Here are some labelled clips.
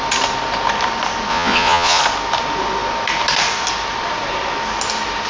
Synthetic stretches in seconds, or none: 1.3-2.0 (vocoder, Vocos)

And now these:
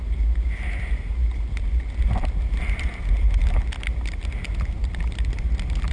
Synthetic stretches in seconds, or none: none

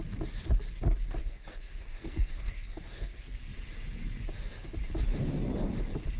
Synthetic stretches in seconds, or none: 1.2-3.4 (codec, SNAC)

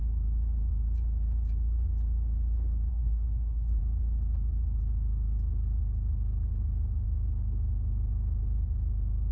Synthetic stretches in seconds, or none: 2.9-3.8 (codec, SNAC)